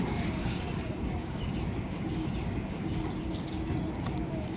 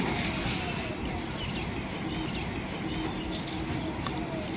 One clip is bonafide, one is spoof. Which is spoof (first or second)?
first